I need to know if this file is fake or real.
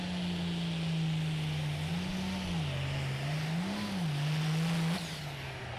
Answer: real